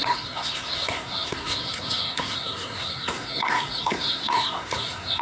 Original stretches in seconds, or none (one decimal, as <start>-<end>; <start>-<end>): none